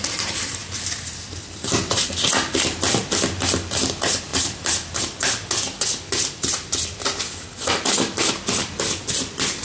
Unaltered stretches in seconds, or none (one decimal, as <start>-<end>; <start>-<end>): 0.0-9.6